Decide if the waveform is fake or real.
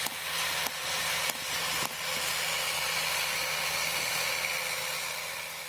real